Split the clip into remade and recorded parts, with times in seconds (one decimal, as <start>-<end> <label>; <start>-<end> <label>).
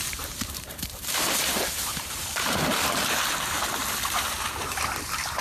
0.0-3.8 remade; 3.8-4.6 recorded; 4.6-5.4 remade